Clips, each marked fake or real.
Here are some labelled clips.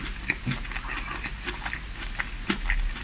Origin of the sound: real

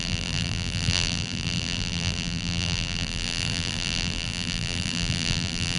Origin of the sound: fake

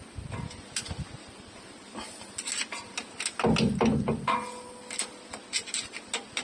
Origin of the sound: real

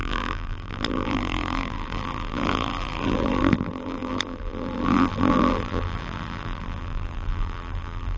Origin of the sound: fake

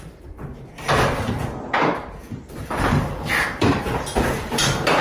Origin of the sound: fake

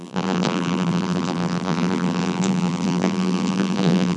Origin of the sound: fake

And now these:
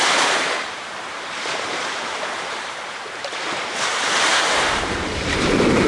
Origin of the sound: fake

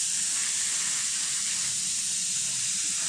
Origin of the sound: fake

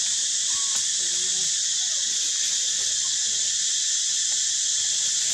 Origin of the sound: real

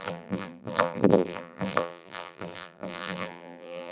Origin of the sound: fake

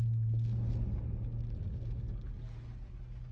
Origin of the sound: real